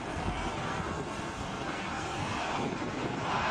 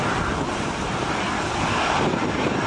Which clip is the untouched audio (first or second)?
second